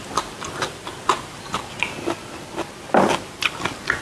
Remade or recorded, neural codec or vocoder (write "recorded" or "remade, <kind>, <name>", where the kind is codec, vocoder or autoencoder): recorded